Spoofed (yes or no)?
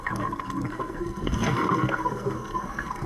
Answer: yes